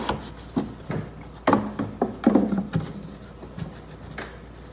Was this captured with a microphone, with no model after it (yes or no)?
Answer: yes